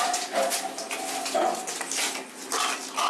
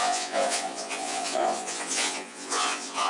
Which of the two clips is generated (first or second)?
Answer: second